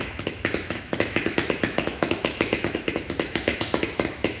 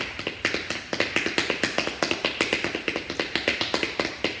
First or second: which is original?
second